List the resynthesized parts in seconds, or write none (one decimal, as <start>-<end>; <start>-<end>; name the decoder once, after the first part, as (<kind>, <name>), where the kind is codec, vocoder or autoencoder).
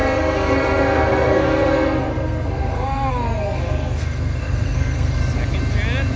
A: 0.0-5.2 (codec, SNAC)